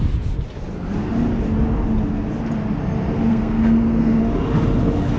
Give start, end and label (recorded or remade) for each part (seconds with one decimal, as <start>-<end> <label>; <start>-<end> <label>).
0.0-3.3 recorded; 3.3-4.2 remade; 4.2-5.2 recorded